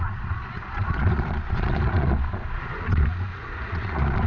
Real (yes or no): no